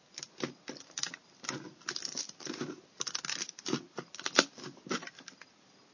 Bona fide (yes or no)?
yes